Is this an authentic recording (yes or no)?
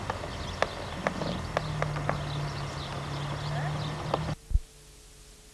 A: yes